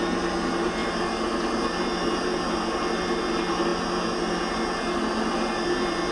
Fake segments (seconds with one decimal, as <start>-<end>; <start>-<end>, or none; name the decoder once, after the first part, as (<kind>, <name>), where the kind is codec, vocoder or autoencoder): none